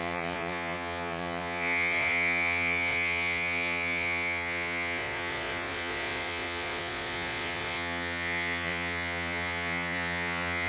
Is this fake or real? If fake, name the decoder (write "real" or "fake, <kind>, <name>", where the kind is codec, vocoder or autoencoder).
fake, vocoder, Vocos